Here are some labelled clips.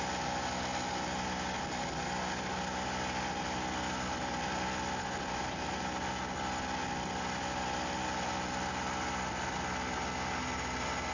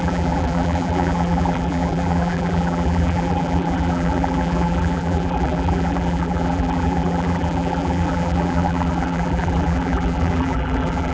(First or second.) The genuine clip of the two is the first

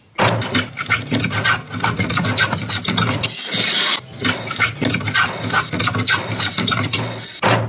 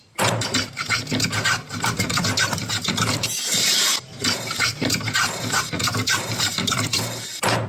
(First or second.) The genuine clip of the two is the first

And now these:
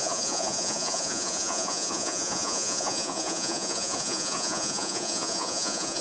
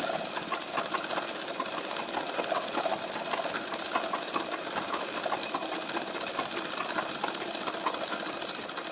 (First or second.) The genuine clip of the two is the second